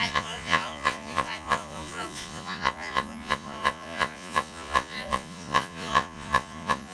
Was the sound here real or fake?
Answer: fake